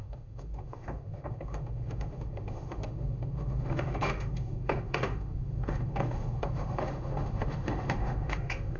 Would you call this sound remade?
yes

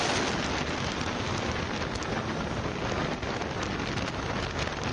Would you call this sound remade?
no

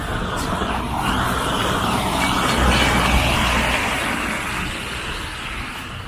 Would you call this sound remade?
no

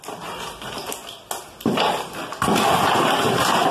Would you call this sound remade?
no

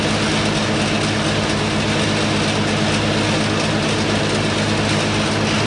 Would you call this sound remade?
no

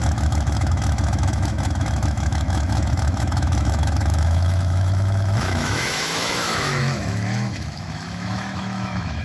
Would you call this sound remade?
yes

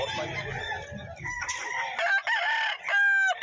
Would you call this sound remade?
no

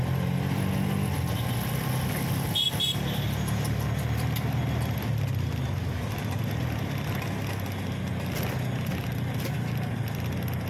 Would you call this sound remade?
no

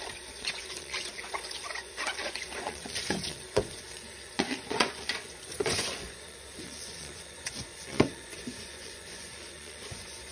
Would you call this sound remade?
yes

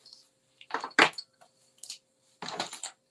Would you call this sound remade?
no